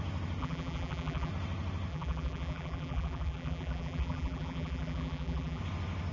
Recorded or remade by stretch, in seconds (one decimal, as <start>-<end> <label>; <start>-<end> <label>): 0.0-0.4 recorded; 0.4-1.3 remade; 1.3-1.9 recorded; 1.9-5.6 remade; 5.6-6.1 recorded